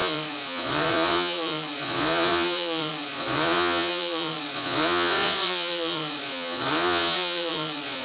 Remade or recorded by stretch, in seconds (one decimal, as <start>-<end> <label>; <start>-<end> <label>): 0.0-8.0 remade